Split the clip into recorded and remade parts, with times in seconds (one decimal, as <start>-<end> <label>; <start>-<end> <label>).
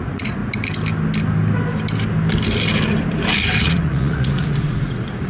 0.0-0.4 remade; 0.4-3.6 recorded; 3.6-5.3 remade